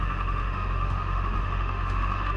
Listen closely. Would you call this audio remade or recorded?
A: remade